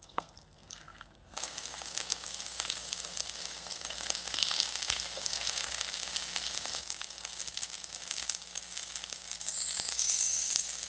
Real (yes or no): no